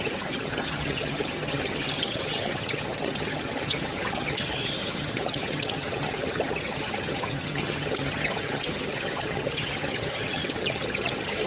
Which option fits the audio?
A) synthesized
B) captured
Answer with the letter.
A